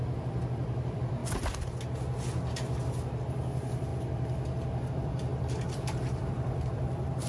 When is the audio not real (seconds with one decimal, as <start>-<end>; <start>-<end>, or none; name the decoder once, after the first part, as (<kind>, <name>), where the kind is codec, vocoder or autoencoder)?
0.0-1.2 (vocoder, BigVGAN v2); 3.2-3.9; 4.9-7.3